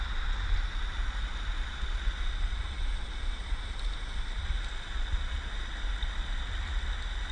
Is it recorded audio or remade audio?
recorded